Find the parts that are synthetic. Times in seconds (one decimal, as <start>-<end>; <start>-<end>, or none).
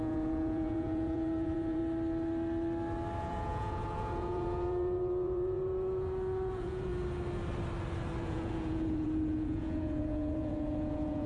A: 0.0-1.8; 3.2-6.9; 8.2-11.3